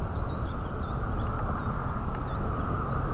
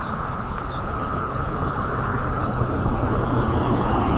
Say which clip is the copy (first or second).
second